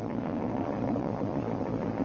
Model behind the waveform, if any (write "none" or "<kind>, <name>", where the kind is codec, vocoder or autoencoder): vocoder, Vocos